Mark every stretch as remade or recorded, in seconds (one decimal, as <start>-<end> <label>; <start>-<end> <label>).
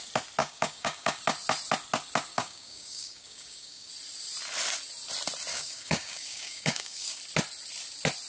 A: 0.0-0.4 recorded; 0.4-1.2 remade; 1.2-2.3 recorded; 2.3-3.9 remade; 3.9-5.5 recorded; 5.5-7.2 remade; 7.2-8.3 recorded